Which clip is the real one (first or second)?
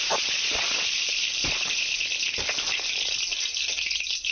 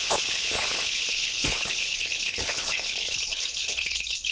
first